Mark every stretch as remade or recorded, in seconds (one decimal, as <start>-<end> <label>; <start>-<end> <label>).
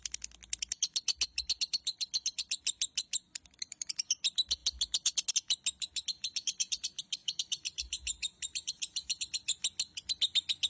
0.0-7.2 recorded; 7.2-9.2 remade; 9.2-10.7 recorded